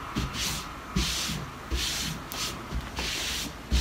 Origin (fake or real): real